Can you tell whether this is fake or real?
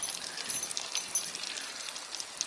real